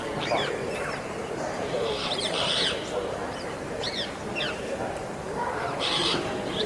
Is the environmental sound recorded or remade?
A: remade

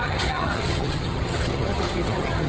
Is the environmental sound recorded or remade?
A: remade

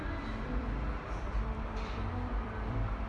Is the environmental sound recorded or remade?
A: remade